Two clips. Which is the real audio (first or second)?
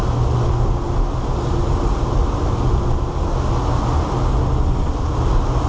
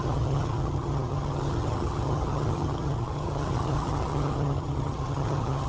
first